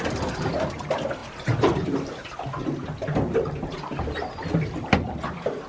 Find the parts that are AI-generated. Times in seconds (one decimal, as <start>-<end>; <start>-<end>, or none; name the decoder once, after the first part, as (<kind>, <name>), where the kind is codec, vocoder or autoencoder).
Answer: none

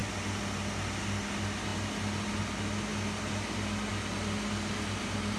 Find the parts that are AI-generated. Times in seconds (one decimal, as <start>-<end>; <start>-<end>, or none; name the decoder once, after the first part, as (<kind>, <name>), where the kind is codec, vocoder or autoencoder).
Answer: none

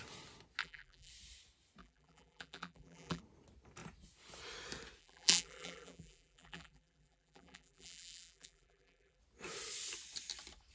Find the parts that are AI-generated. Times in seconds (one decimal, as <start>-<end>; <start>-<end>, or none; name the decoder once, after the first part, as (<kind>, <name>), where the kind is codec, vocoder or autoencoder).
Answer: 0.6-1.1 (vocoder, BigVGAN v2); 1.8-3.2; 5.0-9.2

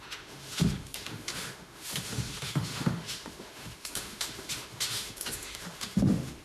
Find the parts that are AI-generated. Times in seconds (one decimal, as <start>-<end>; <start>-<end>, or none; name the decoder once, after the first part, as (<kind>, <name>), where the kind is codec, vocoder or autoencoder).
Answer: 0.0-6.4 (autoencoder, DAC-VAE)

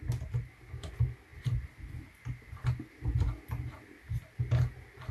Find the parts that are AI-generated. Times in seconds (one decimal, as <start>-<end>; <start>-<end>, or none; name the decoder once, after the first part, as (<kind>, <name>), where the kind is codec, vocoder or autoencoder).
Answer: none

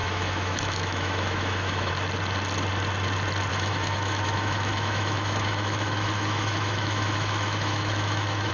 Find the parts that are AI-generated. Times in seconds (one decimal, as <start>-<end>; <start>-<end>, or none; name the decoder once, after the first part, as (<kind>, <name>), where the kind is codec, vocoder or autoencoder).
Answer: 0.0-1.9 (autoencoder, DAC-VAE); 3.5-8.5

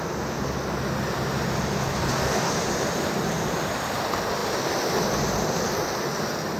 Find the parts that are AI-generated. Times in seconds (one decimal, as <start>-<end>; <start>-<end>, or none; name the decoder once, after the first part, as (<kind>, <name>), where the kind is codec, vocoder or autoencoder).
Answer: 1.9-2.5 (codec, DAC)

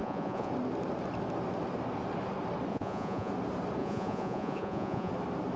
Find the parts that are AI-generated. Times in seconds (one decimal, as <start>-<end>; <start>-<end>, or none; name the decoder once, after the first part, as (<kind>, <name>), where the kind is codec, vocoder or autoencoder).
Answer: 0.0-0.5 (vocoder, Vocos); 2.7-3.3; 3.8-5.1